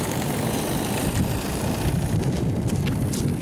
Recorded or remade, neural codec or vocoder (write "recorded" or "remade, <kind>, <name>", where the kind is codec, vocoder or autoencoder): recorded